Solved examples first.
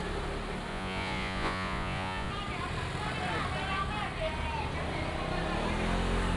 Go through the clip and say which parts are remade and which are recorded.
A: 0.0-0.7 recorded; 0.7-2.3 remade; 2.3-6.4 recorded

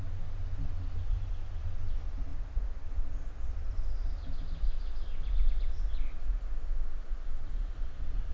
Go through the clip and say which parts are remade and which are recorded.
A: 0.0-8.3 recorded

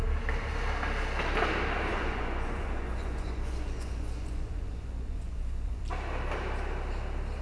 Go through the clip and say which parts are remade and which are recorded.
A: 0.0-1.9 recorded; 1.9-5.8 remade; 5.8-7.4 recorded

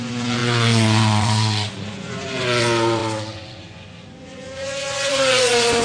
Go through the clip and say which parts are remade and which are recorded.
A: 0.0-5.8 remade